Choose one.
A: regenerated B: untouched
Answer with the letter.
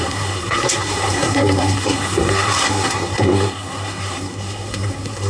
A